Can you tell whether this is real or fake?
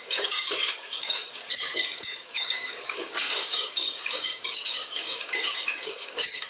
fake